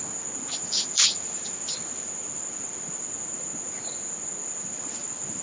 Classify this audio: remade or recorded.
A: remade